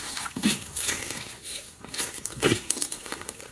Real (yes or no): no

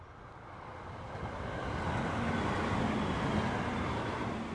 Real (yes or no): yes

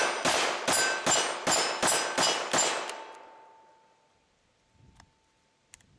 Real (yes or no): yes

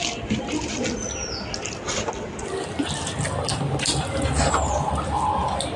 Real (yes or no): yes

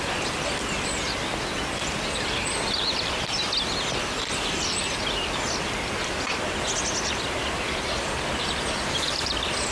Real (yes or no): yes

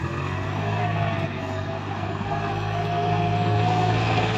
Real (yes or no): no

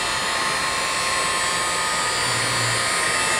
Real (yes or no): yes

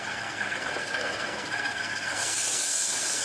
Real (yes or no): no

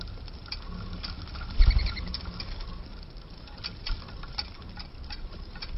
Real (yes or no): yes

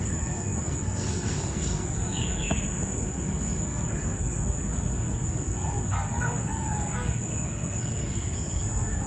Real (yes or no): no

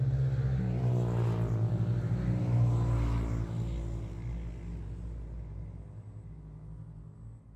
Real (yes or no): yes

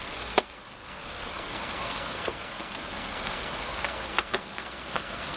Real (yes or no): no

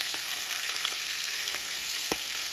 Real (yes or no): no